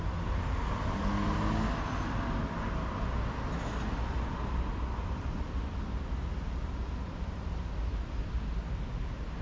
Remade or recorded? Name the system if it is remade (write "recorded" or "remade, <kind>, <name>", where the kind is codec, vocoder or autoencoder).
recorded